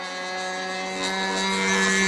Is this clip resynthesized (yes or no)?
no